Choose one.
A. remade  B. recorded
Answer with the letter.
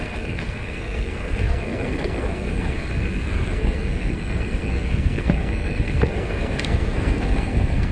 A